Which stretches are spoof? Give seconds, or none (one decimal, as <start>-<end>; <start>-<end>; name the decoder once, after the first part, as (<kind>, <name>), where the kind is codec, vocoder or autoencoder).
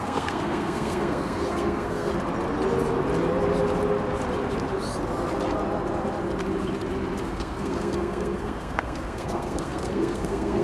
0.0-2.1 (codec, SNAC); 7.2-10.6